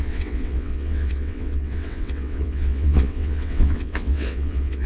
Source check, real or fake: fake